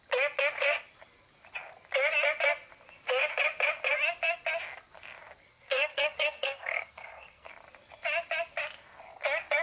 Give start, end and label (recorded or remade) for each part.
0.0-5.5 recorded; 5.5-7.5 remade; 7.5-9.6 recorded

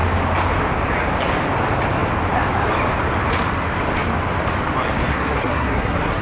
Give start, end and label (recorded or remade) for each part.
0.0-5.1 recorded; 5.1-6.2 remade

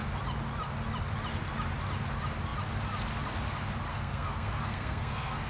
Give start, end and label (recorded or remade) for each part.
0.0-3.9 recorded; 3.9-5.5 remade

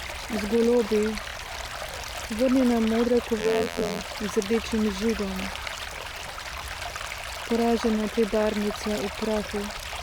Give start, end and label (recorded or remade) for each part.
0.0-3.4 recorded; 3.4-4.0 remade; 4.0-10.0 recorded

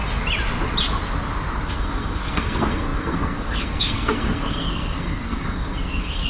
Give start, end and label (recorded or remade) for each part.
0.0-1.7 recorded; 1.7-6.3 remade

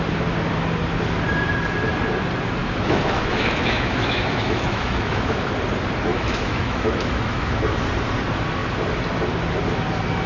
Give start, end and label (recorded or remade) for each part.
0.0-2.6 recorded; 2.6-5.5 remade; 5.5-6.1 recorded; 6.1-7.5 remade; 7.5-10.3 recorded